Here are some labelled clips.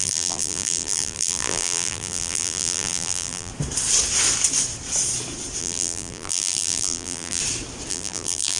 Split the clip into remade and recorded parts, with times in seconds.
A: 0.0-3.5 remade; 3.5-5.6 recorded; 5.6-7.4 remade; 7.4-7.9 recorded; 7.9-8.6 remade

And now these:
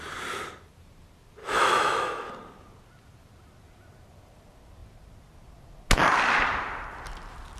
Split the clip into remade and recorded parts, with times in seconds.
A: 0.0-1.4 recorded; 1.4-2.3 remade; 2.3-7.6 recorded

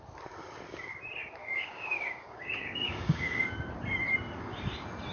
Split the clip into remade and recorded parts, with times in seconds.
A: 0.0-1.4 recorded; 1.4-3.5 remade; 3.5-5.1 recorded

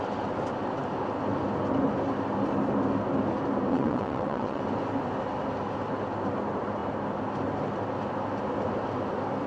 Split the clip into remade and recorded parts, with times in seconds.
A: 0.0-3.7 recorded; 3.7-4.6 remade; 4.6-9.5 recorded

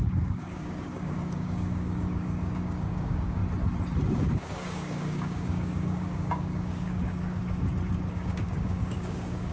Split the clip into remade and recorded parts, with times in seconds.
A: 0.0-3.4 remade; 3.4-4.1 recorded; 4.1-7.4 remade; 7.4-8.1 recorded; 8.1-9.5 remade